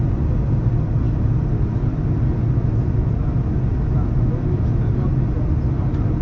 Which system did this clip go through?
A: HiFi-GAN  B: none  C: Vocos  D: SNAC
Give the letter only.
B